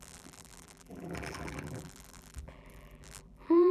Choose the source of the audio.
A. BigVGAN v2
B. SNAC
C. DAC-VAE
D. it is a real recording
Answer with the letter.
A